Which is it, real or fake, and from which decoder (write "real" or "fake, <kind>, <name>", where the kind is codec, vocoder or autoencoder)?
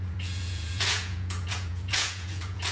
fake, vocoder, Vocos